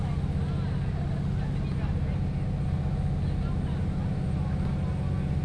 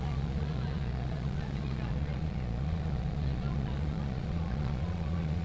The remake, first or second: second